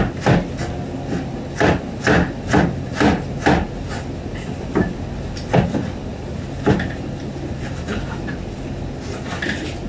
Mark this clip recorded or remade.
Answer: recorded